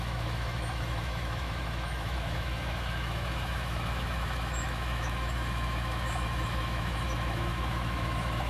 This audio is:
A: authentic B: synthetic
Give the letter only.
B